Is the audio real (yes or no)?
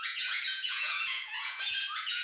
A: no